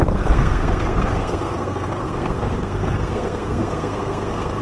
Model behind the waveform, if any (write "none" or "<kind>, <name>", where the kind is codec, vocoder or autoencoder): codec, SNAC